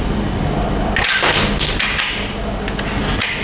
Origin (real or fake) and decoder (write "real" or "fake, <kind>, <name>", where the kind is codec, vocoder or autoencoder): real